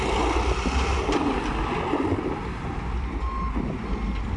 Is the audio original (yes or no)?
yes